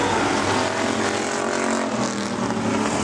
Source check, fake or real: real